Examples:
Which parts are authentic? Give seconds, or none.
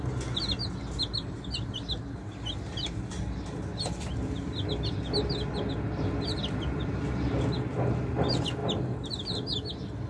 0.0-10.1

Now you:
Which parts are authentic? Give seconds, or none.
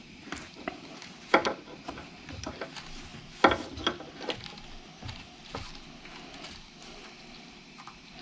3.1-7.6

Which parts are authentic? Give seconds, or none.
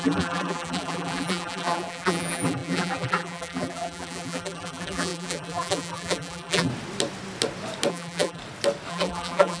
6.7-7.9; 8.4-8.9